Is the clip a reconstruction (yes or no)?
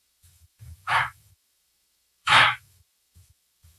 yes